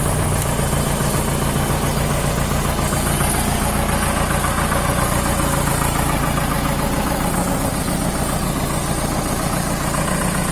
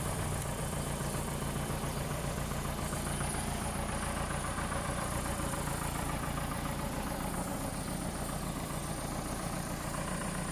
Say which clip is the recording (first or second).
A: first